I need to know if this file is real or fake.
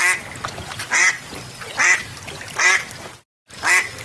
real